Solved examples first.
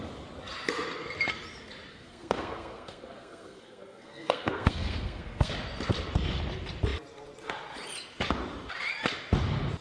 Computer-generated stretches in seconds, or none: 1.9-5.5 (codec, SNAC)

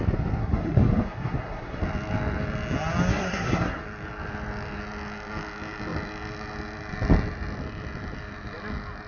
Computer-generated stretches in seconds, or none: 0.4-1.8 (codec, SNAC); 3.1-3.8

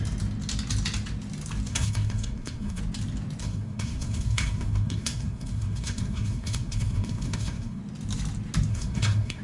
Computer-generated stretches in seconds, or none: 1.7-2.8 (codec, SNAC); 3.4-7.8; 8.7-9.4

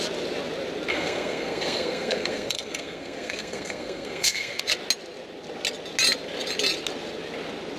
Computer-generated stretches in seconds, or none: 0.9-4.6 (codec, SNAC)